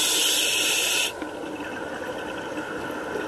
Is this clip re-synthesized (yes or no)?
no